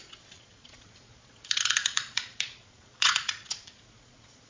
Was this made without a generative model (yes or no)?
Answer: no